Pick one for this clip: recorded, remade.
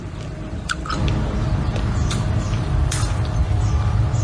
remade